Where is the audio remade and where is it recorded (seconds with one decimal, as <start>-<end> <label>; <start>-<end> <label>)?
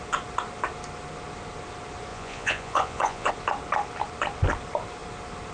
0.0-2.1 recorded; 2.1-3.3 remade; 3.3-5.5 recorded